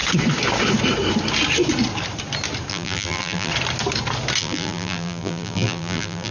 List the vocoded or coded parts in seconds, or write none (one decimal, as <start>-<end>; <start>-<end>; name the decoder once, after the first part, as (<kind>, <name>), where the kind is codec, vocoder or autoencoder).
2.7-3.5 (vocoder, BigVGAN v2); 4.4-6.3